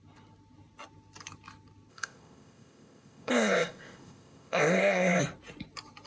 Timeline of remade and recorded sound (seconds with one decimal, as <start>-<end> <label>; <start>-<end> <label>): 0.0-1.9 recorded; 1.9-5.2 remade; 5.2-6.1 recorded